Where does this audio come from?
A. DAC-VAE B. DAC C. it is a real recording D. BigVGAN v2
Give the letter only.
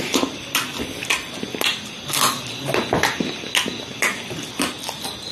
C